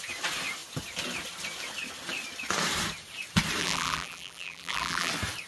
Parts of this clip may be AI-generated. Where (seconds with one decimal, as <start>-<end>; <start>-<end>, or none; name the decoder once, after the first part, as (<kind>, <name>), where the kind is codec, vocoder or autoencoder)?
3.6-5.1 (vocoder, BigVGAN v2)